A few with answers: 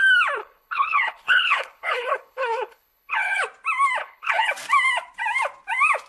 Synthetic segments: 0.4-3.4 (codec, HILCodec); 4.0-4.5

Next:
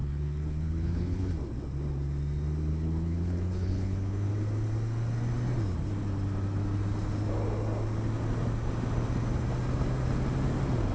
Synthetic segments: 0.0-1.3 (codec, HILCodec); 2.7-4.3